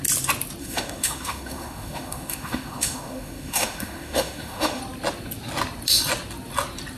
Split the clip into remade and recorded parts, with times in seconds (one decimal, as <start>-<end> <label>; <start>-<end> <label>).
0.0-0.6 recorded; 0.6-4.8 remade; 4.8-7.0 recorded